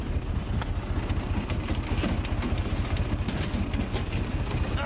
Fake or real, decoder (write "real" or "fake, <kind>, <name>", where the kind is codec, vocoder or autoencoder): real